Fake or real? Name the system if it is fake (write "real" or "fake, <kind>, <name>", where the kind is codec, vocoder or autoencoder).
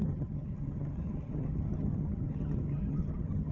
fake, vocoder, HiFi-GAN